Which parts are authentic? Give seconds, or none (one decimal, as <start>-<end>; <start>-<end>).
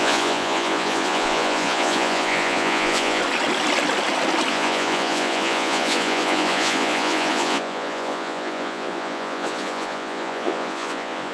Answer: 3.2-4.5